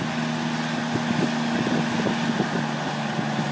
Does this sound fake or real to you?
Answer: real